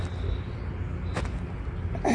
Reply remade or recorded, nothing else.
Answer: recorded